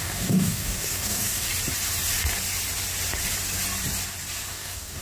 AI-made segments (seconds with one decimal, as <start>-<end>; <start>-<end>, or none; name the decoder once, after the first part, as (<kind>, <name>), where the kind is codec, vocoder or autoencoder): 0.0-1.5 (codec, DAC); 4.5-5.0